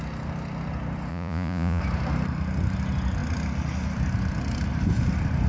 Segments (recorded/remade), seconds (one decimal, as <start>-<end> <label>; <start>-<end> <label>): 0.0-1.1 recorded; 1.1-1.8 remade; 1.8-5.5 recorded